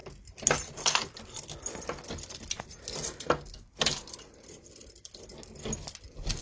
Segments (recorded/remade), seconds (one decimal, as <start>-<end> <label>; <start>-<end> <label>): 0.0-6.4 recorded

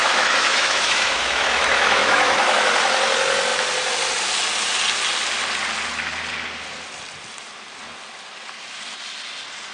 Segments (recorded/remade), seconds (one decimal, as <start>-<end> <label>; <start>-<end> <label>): 0.0-2.6 remade; 2.6-9.7 recorded

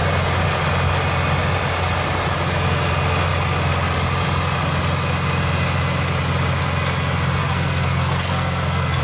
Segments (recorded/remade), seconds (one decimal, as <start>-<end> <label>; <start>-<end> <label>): 0.0-7.4 recorded; 7.4-9.0 remade

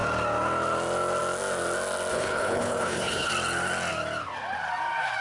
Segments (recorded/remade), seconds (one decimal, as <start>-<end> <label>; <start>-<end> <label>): 0.0-2.1 recorded; 2.1-3.3 remade; 3.3-5.2 recorded